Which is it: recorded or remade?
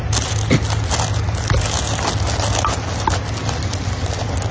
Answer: recorded